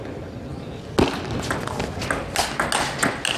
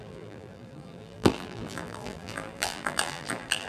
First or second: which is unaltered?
first